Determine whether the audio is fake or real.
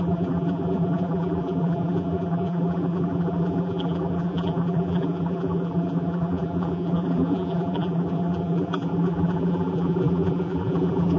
fake